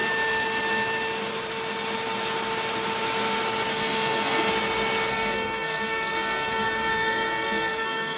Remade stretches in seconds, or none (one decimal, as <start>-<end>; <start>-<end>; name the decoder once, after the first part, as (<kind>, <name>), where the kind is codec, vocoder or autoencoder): 3.7-4.5 (codec, SNAC); 5.1-8.2